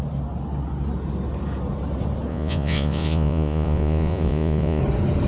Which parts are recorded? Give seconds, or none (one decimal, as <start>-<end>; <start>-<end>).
0.0-2.3; 4.8-5.3